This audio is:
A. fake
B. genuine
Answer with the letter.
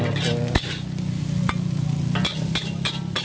B